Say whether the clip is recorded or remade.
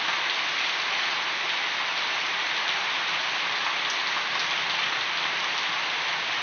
recorded